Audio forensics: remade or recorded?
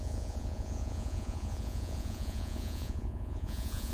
remade